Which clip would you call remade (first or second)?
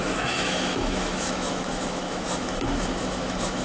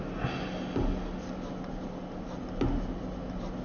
first